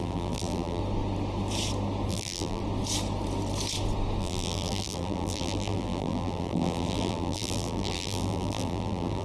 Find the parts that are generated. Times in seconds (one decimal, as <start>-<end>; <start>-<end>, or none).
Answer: 0.0-0.8; 2.1-2.6; 4.2-9.2